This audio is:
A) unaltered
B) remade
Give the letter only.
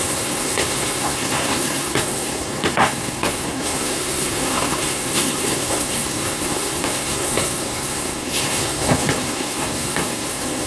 B